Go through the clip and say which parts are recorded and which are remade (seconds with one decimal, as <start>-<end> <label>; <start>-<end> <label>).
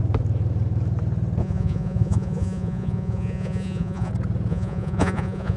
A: 0.0-1.4 recorded; 1.4-4.1 remade; 4.1-4.5 recorded; 4.5-5.6 remade